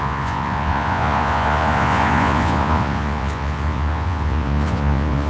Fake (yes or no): yes